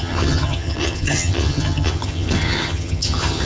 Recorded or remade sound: remade